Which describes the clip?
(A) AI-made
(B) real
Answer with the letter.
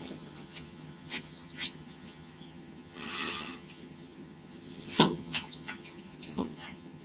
A